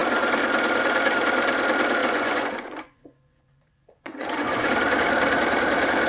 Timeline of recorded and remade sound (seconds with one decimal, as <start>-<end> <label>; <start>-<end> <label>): 0.0-2.0 recorded; 2.0-4.7 remade; 4.7-6.1 recorded